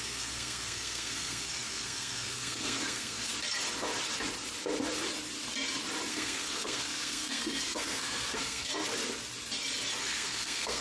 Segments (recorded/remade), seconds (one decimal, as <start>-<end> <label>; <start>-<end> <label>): 0.0-3.3 remade; 3.3-6.1 recorded; 6.1-8.7 remade; 8.7-10.0 recorded; 10.0-10.8 remade